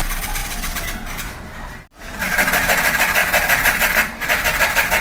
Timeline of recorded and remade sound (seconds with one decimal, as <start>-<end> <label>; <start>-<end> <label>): 0.0-5.0 recorded